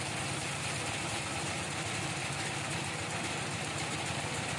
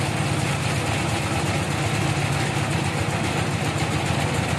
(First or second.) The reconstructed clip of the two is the first